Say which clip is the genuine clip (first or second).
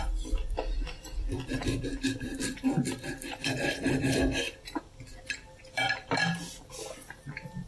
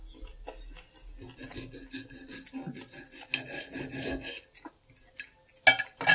second